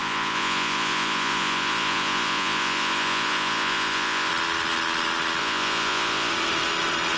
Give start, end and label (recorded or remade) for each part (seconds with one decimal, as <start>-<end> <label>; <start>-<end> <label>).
0.0-4.3 remade; 4.3-5.4 recorded; 5.4-6.3 remade; 6.3-7.2 recorded